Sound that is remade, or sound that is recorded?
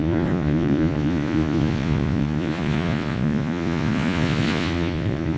remade